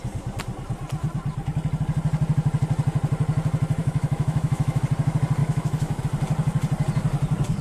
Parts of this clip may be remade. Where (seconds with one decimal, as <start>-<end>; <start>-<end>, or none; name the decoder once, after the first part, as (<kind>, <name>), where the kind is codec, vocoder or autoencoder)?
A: 3.8-4.8 (autoencoder, DAC-VAE); 5.4-6.0